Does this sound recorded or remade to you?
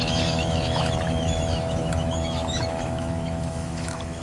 remade